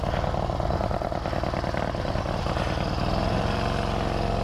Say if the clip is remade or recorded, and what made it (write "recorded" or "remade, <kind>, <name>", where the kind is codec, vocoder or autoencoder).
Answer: recorded